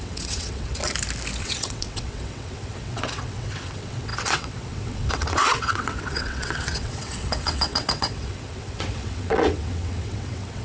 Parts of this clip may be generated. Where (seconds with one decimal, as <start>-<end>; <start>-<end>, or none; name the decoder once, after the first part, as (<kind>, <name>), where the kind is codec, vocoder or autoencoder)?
0.0-0.8 (vocoder, WaveNeXt); 1.4-10.6

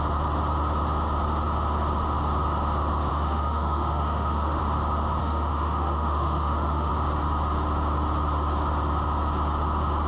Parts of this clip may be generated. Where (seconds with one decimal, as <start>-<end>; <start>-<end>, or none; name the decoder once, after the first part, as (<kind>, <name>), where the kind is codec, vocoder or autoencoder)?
3.1-4.6 (autoencoder, DAC-VAE); 5.2-6.9

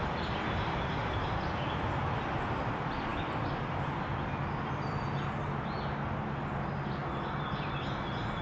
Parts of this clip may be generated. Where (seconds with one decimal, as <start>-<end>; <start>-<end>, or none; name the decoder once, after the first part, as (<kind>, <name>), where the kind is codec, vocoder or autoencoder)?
none

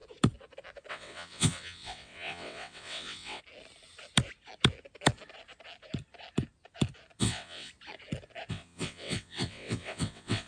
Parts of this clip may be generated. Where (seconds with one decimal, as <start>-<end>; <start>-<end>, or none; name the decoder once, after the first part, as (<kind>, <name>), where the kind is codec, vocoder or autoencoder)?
0.9-3.4 (vocoder, WaveNeXt); 7.2-7.7; 8.5-10.5

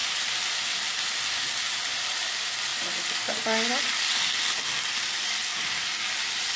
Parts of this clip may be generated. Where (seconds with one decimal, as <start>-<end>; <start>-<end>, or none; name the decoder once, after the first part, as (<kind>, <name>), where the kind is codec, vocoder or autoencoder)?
none

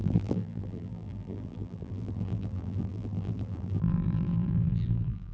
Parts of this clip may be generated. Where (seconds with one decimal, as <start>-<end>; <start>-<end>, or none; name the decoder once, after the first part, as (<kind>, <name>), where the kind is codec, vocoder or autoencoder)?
0.0-5.3 (vocoder, BigVGAN v2)

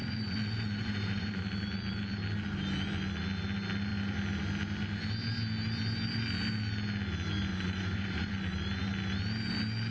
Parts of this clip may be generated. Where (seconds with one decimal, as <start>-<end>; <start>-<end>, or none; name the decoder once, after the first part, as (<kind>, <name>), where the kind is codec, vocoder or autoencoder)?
0.0-1.4 (vocoder, Vocos); 7.5-8.3

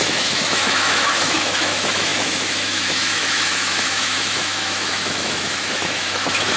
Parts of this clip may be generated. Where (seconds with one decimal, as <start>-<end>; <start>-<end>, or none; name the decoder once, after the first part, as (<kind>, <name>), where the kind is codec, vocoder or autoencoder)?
0.0-6.6 (autoencoder, DAC-VAE)